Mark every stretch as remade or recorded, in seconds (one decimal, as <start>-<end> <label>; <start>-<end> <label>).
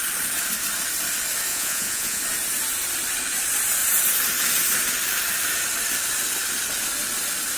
0.0-1.5 recorded; 1.5-2.2 remade; 2.2-7.6 recorded